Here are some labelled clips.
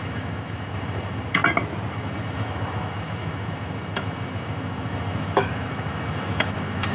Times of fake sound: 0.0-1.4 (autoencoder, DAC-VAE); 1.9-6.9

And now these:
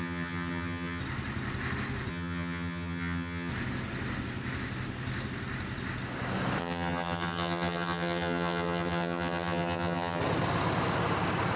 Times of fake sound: 0.0-1.0 (vocoder, HiFi-GAN); 2.1-3.5; 6.6-10.2